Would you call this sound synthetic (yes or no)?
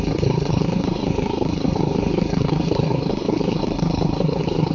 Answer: yes